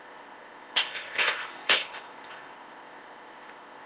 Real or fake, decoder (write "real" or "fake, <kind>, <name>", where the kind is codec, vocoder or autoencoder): fake, codec, ZipCodec